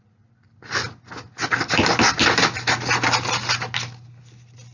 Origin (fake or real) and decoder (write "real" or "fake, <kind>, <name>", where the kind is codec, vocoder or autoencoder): real